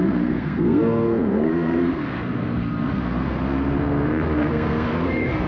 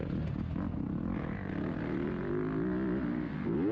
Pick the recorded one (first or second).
second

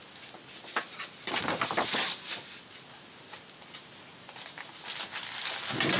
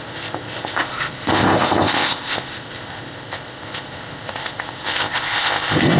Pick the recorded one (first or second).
first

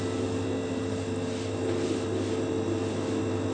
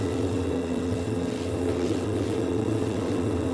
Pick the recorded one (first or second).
first